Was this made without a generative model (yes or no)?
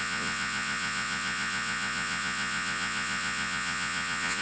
no